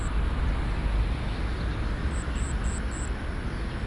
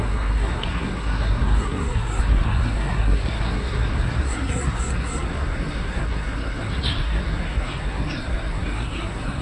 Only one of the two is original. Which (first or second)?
first